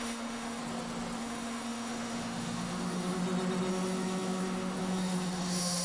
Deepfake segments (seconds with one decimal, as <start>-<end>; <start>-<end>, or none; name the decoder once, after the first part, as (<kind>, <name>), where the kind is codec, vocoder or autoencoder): 0.0-0.6 (autoencoder, DAC-VAE); 1.2-3.2; 3.7-5.8

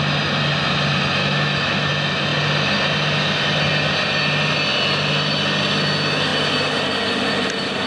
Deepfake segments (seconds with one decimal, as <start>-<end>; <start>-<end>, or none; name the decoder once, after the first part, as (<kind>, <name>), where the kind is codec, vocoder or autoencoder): 1.2-1.9 (autoencoder, DAC-VAE)

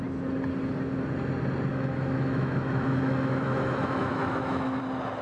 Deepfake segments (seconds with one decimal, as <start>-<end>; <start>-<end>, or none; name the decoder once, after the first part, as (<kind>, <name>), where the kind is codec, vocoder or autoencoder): 1.7-4.8 (autoencoder, DAC-VAE)

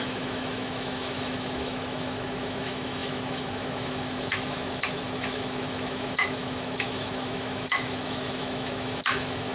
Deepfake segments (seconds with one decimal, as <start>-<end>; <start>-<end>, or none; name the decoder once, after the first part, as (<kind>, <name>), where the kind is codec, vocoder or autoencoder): 0.0-9.5 (autoencoder, DAC-VAE)

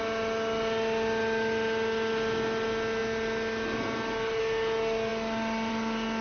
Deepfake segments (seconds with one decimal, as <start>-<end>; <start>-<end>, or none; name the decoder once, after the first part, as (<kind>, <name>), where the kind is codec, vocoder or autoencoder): none

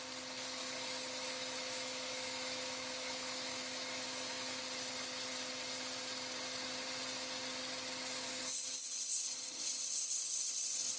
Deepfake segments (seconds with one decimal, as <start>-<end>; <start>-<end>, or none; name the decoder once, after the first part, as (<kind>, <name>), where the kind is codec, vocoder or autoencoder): 0.6-4.6 (autoencoder, DAC-VAE)

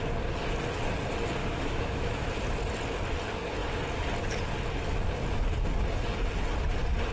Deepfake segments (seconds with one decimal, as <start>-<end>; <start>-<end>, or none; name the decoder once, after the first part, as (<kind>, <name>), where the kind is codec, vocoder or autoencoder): 1.4-2.3 (autoencoder, DAC-VAE)